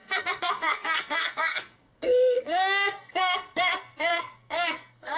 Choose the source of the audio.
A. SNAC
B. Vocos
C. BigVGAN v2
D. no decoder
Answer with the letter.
A